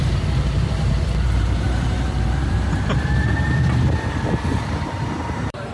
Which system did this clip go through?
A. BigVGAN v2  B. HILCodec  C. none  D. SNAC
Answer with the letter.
A